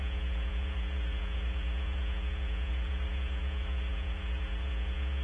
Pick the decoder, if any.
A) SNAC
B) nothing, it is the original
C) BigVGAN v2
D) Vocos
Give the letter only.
D